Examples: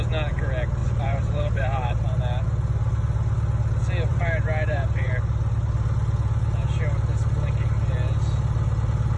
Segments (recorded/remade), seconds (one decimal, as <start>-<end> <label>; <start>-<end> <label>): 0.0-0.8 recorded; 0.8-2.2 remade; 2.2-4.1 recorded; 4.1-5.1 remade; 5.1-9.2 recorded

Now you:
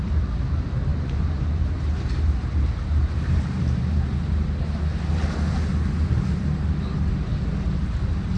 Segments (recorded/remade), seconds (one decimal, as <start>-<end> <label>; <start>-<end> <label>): 0.0-0.9 recorded; 0.9-3.8 remade; 3.8-8.4 recorded

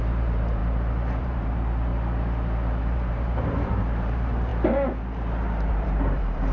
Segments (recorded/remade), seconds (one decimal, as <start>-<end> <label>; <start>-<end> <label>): 0.0-0.6 remade; 0.6-1.2 recorded; 1.2-1.9 remade; 1.9-2.8 recorded; 2.8-4.5 remade; 4.5-5.7 recorded; 5.7-6.5 remade